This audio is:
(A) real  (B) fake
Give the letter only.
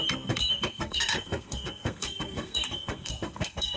B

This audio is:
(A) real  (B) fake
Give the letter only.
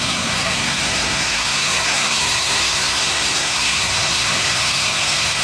B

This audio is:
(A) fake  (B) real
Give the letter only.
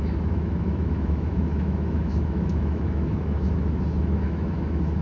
A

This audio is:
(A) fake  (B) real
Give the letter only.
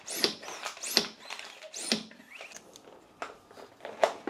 B